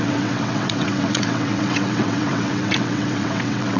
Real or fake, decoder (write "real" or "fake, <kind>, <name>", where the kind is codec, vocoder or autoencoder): fake, vocoder, WaveNeXt